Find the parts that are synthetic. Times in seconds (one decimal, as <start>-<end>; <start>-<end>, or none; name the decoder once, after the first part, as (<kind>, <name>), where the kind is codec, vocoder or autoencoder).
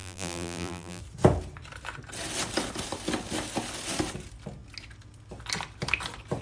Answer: 0.0-1.0 (vocoder, BigVGAN v2)